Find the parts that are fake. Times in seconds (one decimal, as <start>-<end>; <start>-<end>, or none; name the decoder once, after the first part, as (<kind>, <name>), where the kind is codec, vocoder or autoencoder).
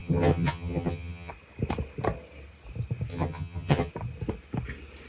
0.0-1.3 (vocoder, HiFi-GAN); 3.1-3.9